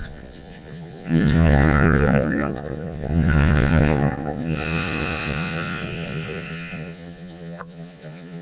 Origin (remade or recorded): remade